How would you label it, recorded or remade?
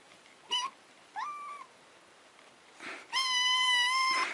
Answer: remade